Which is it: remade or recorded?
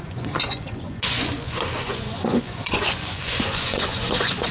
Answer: remade